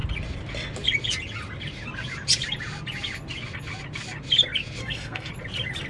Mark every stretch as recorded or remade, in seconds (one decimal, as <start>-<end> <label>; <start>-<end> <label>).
0.0-4.8 recorded; 4.8-5.3 remade; 5.3-5.9 recorded